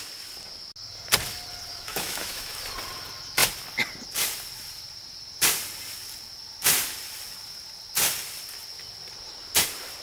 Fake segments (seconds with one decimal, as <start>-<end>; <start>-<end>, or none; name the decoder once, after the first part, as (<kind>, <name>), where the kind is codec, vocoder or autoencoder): 1.7-2.6 (autoencoder, DAC-VAE)